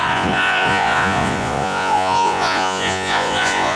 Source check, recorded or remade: remade